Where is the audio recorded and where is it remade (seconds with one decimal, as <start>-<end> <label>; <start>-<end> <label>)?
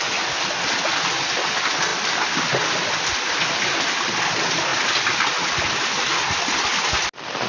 0.0-1.9 recorded; 1.9-3.4 remade; 3.4-4.7 recorded; 4.7-6.7 remade; 6.7-7.5 recorded